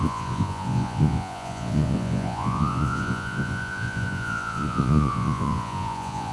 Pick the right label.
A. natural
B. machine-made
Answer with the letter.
B